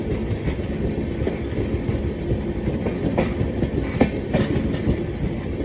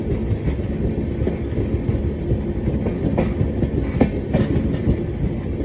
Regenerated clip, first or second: first